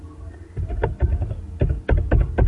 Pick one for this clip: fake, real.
real